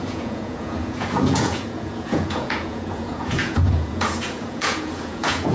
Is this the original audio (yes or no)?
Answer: no